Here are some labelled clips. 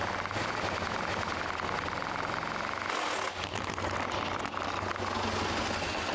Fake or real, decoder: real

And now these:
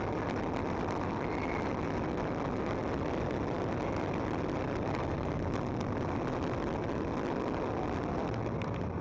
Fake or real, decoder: real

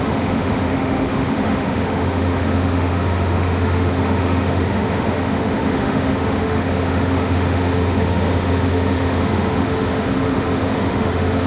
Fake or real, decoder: fake, autoencoder, DAC-VAE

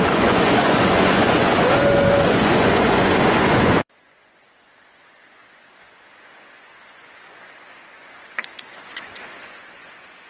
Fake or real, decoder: fake, vocoder, Vocos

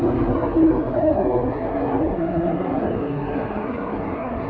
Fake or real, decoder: fake, codec, SNAC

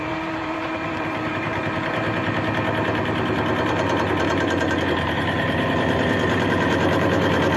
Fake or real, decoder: fake, vocoder, BigVGAN v2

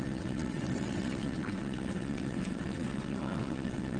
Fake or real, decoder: fake, vocoder, WaveNeXt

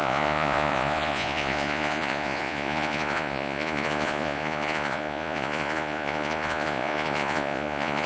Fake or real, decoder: fake, vocoder, Vocos